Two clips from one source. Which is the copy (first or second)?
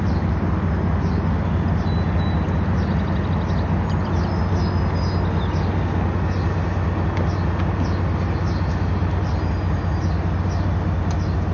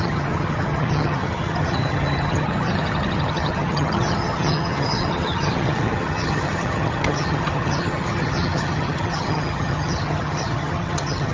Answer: second